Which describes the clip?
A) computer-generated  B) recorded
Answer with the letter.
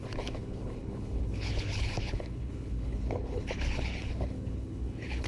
A